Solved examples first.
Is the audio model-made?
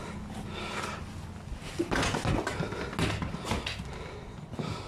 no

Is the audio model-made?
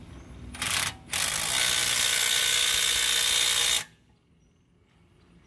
no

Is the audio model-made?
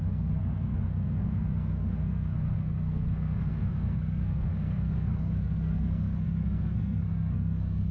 yes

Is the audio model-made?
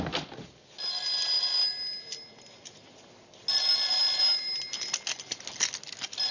no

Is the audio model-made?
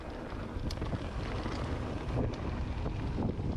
no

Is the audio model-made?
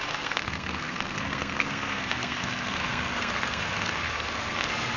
yes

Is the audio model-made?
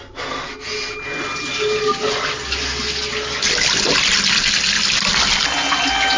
no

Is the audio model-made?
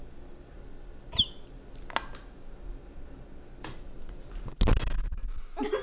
no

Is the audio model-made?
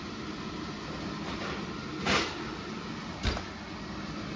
no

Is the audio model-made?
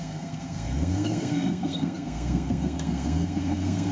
yes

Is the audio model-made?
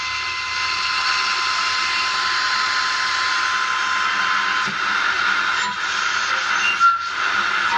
no